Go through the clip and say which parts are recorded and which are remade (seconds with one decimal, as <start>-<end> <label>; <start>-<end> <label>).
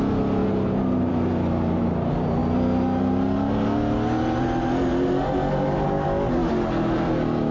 0.0-7.5 recorded